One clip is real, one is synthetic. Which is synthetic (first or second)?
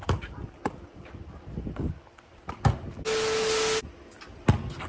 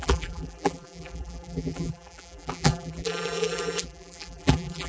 second